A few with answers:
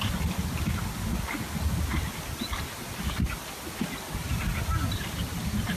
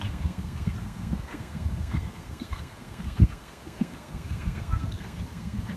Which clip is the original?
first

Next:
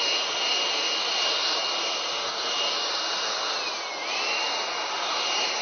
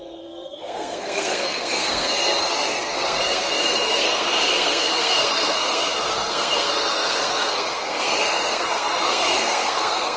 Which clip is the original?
first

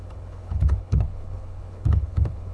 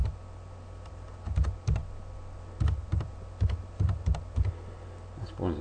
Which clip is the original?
second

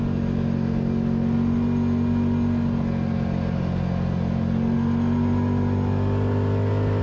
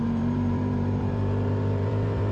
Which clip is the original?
first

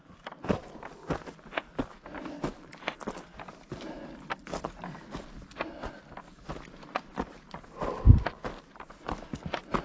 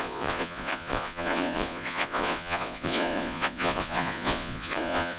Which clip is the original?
first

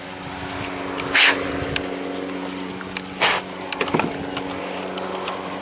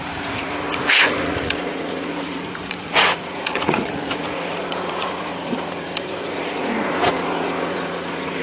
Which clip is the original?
first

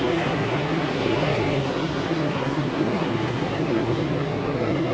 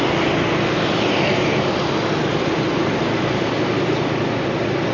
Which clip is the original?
second